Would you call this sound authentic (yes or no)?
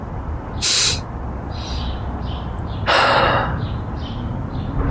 yes